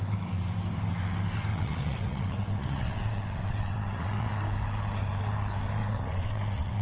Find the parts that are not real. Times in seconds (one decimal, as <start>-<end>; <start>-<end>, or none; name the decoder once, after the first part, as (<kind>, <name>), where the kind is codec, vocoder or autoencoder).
1.5-4.3 (vocoder, WaveNeXt); 5.8-6.8